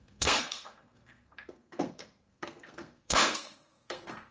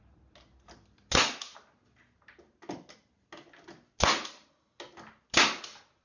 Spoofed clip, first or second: first